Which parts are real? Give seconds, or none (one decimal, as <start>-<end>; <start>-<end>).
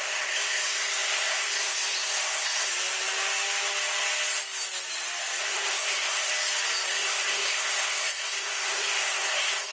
2.7-5.4; 6.3-6.9